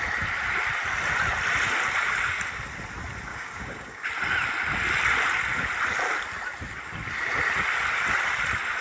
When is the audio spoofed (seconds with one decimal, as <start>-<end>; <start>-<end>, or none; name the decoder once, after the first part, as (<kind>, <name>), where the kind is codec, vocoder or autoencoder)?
3.3-4.1 (codec, DAC)